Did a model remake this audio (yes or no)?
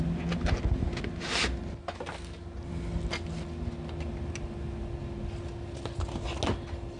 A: no